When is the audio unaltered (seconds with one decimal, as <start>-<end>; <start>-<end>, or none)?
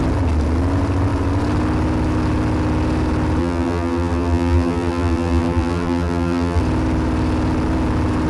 0.0-3.4; 6.6-8.3